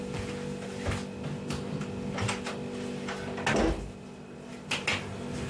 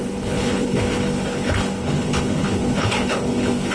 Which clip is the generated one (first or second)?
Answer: second